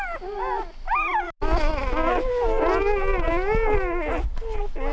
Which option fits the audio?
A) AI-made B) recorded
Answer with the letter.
B